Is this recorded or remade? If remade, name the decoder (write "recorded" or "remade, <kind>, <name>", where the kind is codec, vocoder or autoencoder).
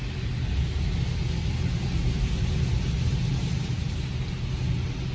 recorded